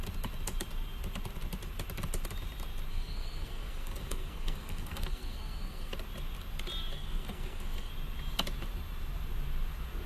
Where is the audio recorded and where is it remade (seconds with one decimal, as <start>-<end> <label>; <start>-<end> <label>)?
0.0-2.9 recorded; 2.9-5.9 remade; 5.9-6.9 recorded; 6.9-7.9 remade; 7.9-10.1 recorded